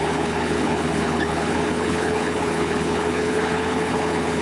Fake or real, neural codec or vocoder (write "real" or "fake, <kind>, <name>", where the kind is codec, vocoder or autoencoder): fake, codec, HILCodec